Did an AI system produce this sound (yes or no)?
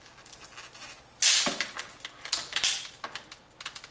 no